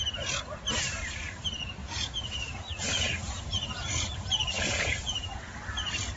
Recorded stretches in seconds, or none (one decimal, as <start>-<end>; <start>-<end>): 0.0-1.8; 5.5-6.2